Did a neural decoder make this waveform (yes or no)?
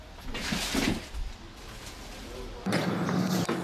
no